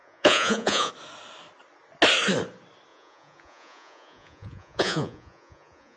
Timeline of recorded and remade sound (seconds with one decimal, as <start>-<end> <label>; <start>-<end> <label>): 0.0-0.9 remade; 0.9-2.9 recorded; 2.9-6.0 remade